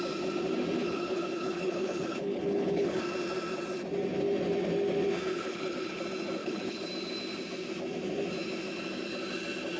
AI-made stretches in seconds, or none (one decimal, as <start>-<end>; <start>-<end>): 0.8-3.0; 5.3-6.0; 6.4-6.9